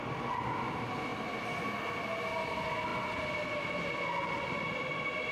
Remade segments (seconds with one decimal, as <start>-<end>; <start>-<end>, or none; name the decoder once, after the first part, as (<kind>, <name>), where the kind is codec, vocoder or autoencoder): none